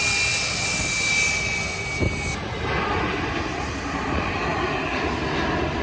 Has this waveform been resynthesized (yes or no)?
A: no